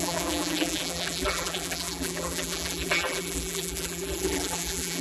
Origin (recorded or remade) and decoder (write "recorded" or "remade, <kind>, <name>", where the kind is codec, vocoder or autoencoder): remade, vocoder, BigVGAN v2